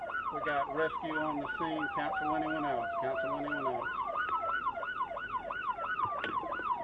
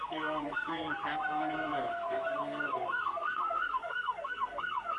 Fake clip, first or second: second